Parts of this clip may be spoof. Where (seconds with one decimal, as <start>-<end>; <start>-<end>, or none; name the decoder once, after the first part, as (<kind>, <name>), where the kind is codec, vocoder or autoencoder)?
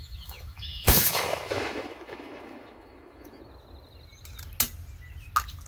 0.0-3.4 (autoencoder, DAC-VAE)